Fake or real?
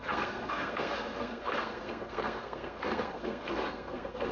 fake